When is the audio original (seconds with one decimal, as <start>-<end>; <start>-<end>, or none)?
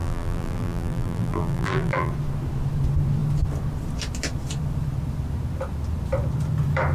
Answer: 2.1-6.9